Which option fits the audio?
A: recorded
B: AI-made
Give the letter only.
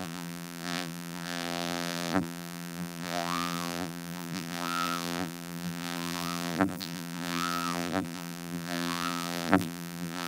B